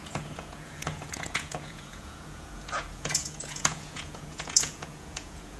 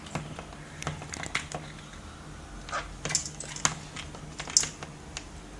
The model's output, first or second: first